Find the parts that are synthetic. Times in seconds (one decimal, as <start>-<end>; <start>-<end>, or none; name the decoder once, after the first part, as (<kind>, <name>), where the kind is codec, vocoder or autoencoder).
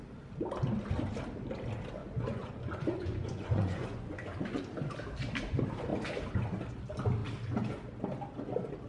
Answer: 2.0-4.6 (vocoder, Vocos)